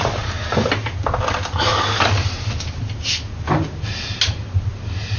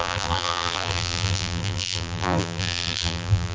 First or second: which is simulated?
second